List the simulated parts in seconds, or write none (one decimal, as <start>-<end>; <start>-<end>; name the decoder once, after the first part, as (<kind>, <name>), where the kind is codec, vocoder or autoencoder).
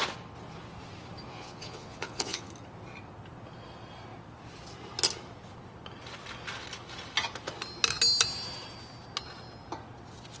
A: 1.3-2.5 (vocoder, Vocos)